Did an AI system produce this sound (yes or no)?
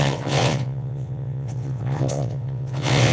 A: yes